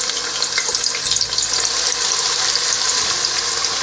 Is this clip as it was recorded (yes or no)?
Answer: yes